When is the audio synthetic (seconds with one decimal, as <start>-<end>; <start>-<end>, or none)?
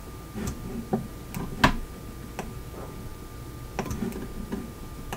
none